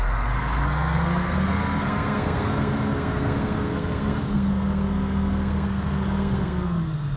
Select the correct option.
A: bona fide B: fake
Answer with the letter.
B